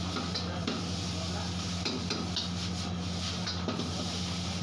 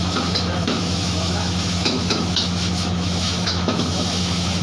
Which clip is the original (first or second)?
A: first